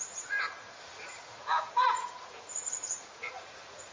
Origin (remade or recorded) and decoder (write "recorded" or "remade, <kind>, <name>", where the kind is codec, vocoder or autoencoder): remade, vocoder, Vocos